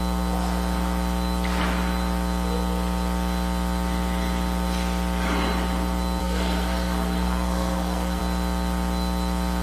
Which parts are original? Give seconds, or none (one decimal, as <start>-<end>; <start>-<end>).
0.0-6.2; 8.2-9.6